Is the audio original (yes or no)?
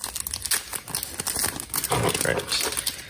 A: yes